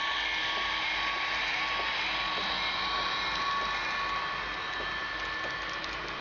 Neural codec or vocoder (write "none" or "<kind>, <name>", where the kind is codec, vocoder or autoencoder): none